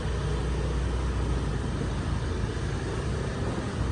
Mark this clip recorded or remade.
recorded